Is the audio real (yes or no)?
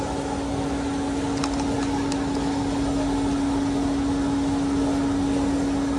yes